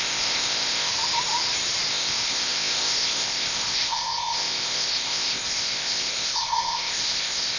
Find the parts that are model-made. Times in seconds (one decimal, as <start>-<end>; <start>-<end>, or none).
0.0-0.9; 1.9-7.6